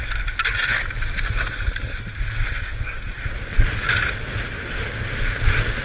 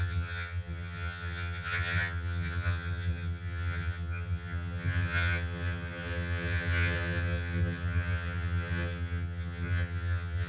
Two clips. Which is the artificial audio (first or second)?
second